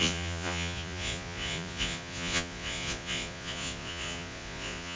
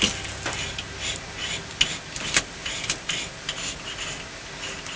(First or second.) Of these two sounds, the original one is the second